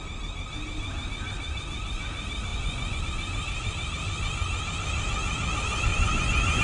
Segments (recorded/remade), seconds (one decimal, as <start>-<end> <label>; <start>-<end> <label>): 0.0-2.5 recorded; 2.5-3.0 remade; 3.0-5.9 recorded; 5.9-6.6 remade

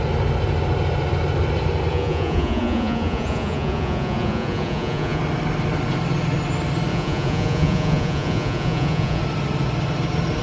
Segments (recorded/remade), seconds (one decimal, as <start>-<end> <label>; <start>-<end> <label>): 0.0-1.9 recorded; 1.9-5.2 remade; 5.2-6.9 recorded; 6.9-9.2 remade; 9.2-10.4 recorded

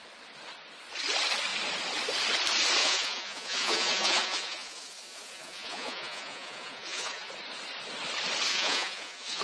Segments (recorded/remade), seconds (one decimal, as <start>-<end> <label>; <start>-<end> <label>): 0.0-2.8 recorded; 2.8-7.3 remade; 7.3-8.5 recorded; 8.5-9.4 remade

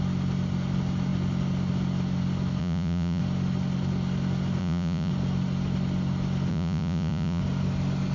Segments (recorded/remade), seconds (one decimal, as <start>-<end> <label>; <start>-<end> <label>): 0.0-2.6 recorded; 2.6-3.2 remade; 3.2-4.6 recorded; 4.6-5.1 remade; 5.1-6.5 recorded; 6.5-7.4 remade; 7.4-8.1 recorded

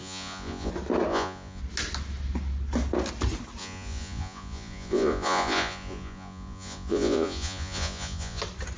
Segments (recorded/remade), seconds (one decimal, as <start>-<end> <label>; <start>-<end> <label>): 0.0-0.7 remade; 0.7-1.1 recorded; 1.1-1.6 remade; 1.6-3.6 recorded; 3.6-8.4 remade; 8.4-8.8 recorded

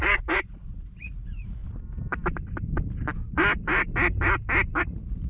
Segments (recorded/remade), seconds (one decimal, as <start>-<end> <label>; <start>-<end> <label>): 0.0-1.6 remade; 1.6-4.8 recorded; 4.8-5.3 remade

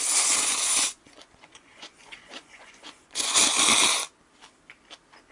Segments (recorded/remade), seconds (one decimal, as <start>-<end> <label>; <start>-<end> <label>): 0.0-0.5 recorded; 0.5-3.4 remade; 3.4-5.3 recorded

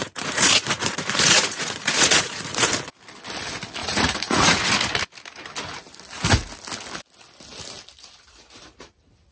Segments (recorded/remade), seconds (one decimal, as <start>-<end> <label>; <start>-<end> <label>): 0.0-2.7 remade; 2.7-3.8 recorded; 3.8-4.7 remade; 4.7-9.3 recorded